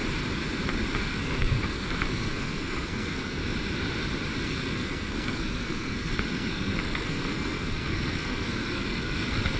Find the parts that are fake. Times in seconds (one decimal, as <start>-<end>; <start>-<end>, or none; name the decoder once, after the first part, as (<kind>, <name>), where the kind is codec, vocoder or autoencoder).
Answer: 1.0-3.4 (codec, SNAC); 4.4-9.6